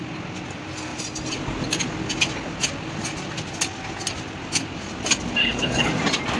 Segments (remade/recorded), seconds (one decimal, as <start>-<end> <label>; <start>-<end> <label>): 0.0-5.4 recorded; 5.4-5.9 remade; 5.9-6.4 recorded

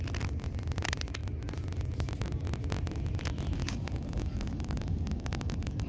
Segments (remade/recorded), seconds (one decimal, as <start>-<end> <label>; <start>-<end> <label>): 0.0-3.6 recorded; 3.6-5.9 remade

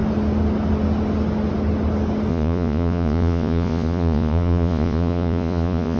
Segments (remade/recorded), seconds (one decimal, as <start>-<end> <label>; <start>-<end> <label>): 0.0-2.3 recorded; 2.3-6.0 remade